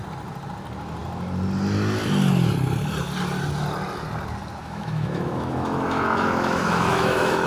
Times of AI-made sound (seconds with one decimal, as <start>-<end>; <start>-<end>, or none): 4.6-7.5